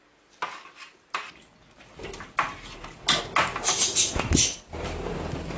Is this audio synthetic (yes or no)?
no